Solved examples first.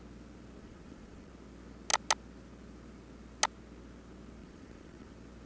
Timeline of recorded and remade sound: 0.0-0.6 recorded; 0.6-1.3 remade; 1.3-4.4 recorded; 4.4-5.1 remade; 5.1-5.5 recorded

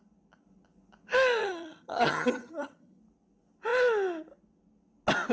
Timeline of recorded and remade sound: 0.0-1.4 recorded; 1.4-3.0 remade; 3.0-5.3 recorded